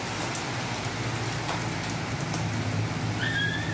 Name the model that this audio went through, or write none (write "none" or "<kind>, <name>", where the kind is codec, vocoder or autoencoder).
none